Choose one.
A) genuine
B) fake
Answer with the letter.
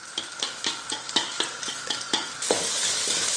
B